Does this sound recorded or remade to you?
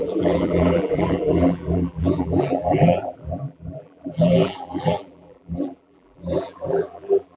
remade